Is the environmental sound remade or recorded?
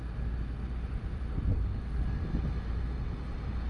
recorded